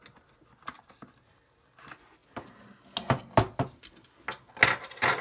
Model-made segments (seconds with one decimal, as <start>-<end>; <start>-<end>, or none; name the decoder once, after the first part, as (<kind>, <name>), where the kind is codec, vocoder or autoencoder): none